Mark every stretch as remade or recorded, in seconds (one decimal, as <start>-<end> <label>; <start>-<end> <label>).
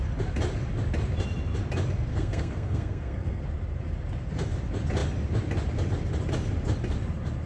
0.0-2.1 recorded; 2.1-3.4 remade; 3.4-7.5 recorded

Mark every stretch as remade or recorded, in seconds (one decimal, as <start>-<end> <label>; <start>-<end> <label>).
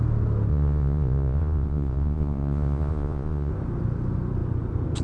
0.0-0.5 recorded; 0.5-3.5 remade; 3.5-5.0 recorded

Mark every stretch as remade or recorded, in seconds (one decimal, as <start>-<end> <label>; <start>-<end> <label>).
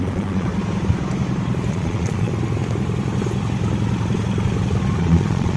0.0-0.5 remade; 0.5-1.7 recorded; 1.7-2.3 remade; 2.3-5.0 recorded; 5.0-5.6 remade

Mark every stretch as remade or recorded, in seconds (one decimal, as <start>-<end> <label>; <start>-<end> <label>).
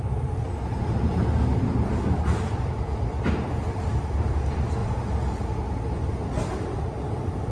0.0-1.5 recorded; 1.5-4.0 remade; 4.0-4.8 recorded; 4.8-5.5 remade; 5.5-7.5 recorded